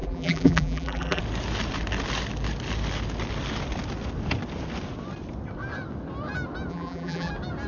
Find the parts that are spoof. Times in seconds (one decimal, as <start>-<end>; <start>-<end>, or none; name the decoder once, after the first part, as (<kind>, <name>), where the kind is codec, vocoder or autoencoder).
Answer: 0.0-1.2 (vocoder, BigVGAN v2); 6.7-7.3